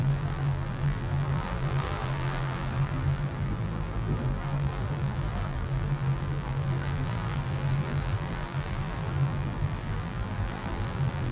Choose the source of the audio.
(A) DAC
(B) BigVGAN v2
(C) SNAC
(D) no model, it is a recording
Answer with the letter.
B